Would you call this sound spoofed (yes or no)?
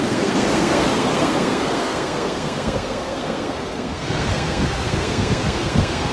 yes